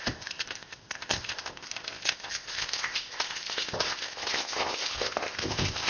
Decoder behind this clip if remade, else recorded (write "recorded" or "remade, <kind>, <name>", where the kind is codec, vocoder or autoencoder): remade, codec, ZipCodec